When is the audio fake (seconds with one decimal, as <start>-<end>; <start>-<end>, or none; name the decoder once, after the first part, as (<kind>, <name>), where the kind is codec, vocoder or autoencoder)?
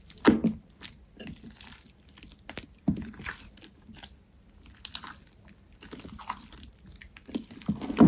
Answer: none